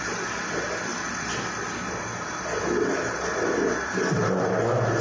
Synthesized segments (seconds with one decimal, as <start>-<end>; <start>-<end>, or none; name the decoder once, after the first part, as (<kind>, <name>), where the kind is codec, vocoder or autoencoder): none